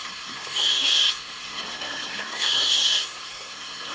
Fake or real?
fake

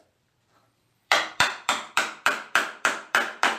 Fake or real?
fake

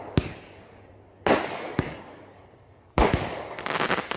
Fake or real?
fake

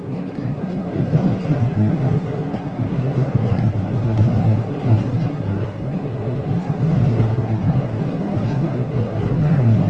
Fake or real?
fake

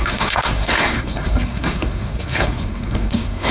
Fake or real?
fake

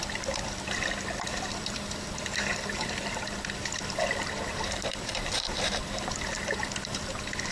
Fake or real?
fake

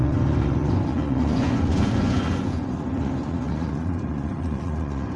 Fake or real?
fake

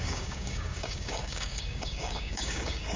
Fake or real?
fake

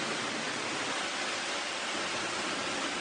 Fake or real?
real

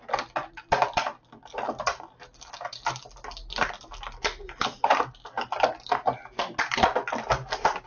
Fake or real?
real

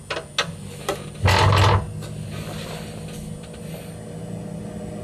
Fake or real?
real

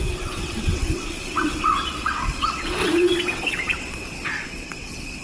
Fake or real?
fake